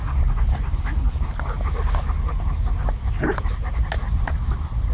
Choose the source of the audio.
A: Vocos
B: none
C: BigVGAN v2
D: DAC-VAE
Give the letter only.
B